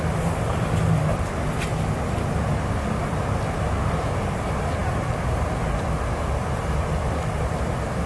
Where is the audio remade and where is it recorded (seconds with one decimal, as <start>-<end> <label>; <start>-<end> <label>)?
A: 0.0-8.1 recorded